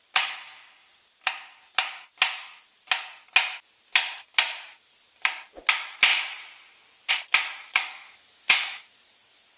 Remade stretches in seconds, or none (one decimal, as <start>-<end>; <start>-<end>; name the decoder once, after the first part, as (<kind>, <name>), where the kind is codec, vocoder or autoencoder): 7.7-9.1 (autoencoder, DAC-VAE)